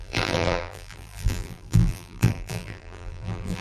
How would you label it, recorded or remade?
remade